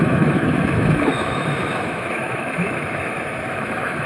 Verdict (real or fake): fake